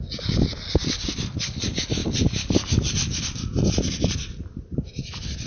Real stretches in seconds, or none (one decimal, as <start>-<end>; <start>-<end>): 0.0-2.0